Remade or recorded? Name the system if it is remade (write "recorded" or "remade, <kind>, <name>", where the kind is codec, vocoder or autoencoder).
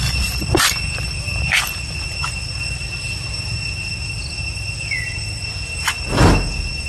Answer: recorded